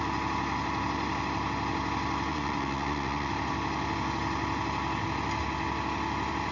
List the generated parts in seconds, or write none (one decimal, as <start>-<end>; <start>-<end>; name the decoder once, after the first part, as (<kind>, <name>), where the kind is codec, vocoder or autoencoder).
2.3-3.3 (vocoder, Vocos)